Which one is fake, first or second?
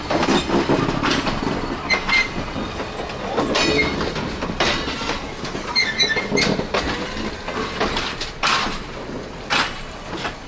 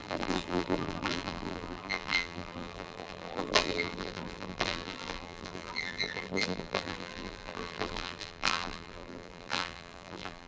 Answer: second